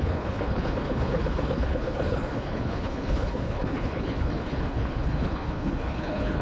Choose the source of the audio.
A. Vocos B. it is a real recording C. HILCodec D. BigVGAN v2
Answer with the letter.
C